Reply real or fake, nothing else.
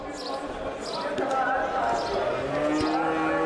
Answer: real